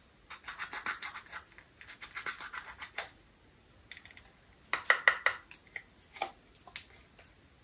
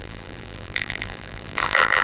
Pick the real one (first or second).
first